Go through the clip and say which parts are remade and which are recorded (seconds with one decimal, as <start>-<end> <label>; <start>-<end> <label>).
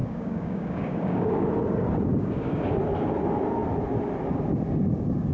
0.0-1.5 remade; 1.5-2.1 recorded; 2.1-2.6 remade; 2.6-5.3 recorded